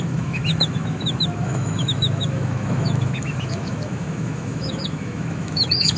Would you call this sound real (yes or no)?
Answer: no